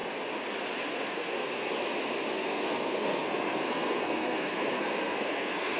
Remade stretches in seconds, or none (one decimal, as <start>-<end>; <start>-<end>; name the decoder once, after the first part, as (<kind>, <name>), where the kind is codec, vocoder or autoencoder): 0.9-1.7 (codec, SNAC); 2.3-5.8